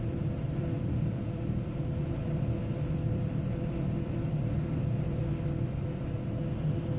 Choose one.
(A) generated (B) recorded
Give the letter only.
A